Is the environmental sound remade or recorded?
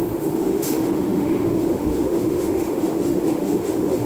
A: remade